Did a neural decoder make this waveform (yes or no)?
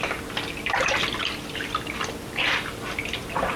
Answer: no